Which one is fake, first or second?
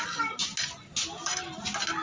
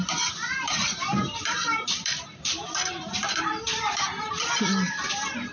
second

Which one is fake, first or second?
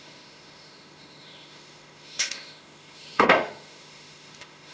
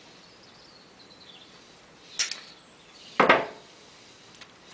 first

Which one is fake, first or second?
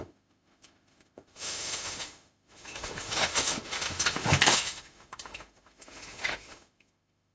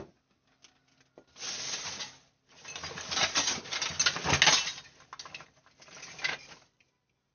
first